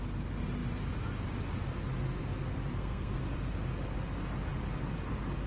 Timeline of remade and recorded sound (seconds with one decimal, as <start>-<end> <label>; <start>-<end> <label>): 0.0-2.7 recorded; 2.7-3.2 remade; 3.2-5.5 recorded